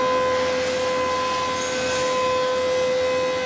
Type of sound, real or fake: real